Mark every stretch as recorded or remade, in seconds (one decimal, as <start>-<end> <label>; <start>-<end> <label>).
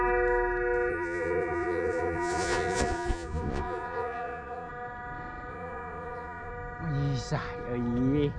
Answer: 0.0-0.9 recorded; 0.9-4.7 remade; 4.7-5.5 recorded; 5.5-6.5 remade; 6.5-8.4 recorded